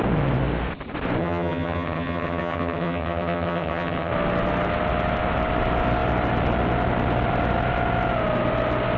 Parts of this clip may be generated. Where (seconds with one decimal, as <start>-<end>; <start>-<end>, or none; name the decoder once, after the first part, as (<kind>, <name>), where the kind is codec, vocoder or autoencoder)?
1.2-4.1 (vocoder, HiFi-GAN)